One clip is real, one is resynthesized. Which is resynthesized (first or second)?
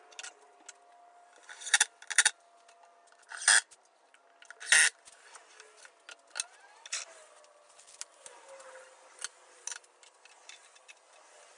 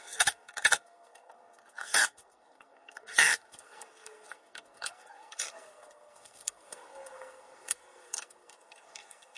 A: second